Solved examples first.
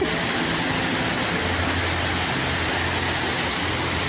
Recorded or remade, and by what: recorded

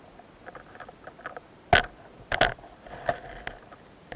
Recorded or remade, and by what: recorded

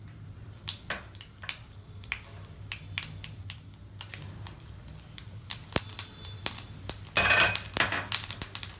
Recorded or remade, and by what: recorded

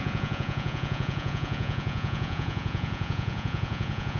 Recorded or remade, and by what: remade, vocoder, Vocos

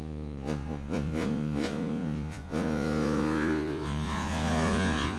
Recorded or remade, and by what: remade, vocoder, Vocos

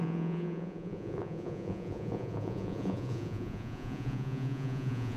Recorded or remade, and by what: remade, vocoder, Vocos